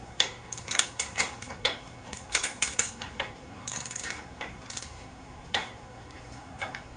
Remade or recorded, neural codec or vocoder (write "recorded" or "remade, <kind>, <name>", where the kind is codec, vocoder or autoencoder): remade, codec, SNAC